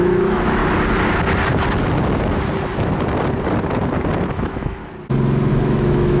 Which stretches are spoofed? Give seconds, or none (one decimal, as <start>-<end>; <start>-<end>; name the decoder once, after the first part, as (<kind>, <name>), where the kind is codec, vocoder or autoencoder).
0.0-0.6 (autoencoder, DAC-VAE); 4.3-4.8; 5.5-6.2